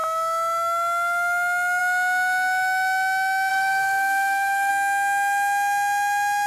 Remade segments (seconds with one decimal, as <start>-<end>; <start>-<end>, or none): 3.5-4.7